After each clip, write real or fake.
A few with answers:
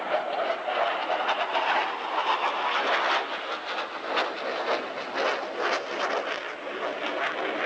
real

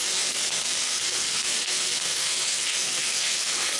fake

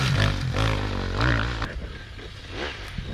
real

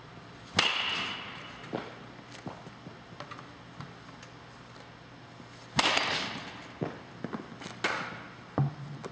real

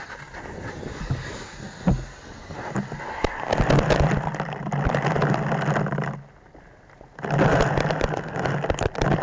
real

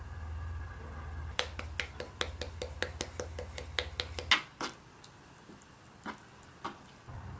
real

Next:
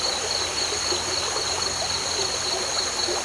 real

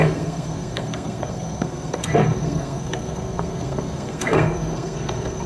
fake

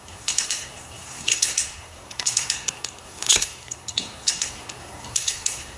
fake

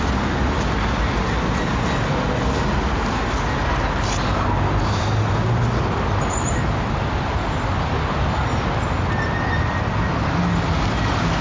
real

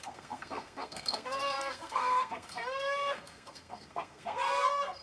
fake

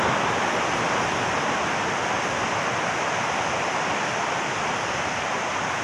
real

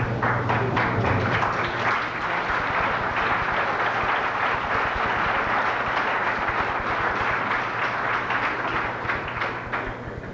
real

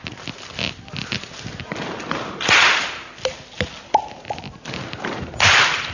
real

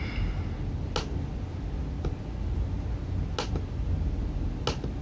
real